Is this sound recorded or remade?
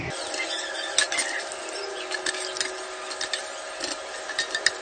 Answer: recorded